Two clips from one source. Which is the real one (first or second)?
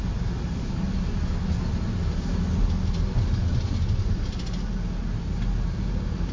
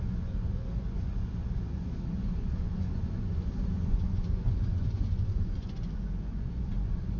first